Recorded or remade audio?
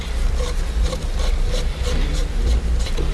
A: recorded